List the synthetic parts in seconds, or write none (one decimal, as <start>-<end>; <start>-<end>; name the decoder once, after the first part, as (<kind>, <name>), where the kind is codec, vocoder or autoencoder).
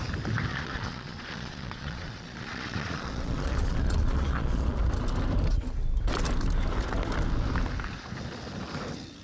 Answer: 0.5-4.8 (vocoder, Vocos)